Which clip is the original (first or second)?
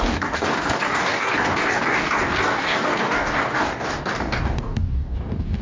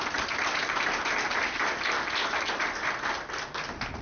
second